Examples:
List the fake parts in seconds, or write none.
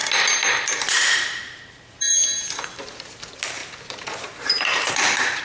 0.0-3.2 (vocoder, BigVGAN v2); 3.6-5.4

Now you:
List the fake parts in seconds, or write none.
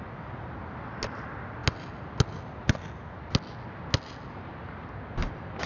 none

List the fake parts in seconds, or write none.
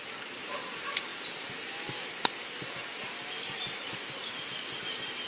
none